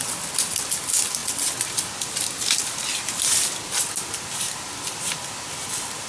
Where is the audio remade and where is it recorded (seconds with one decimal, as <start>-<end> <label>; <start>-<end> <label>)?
0.0-6.1 recorded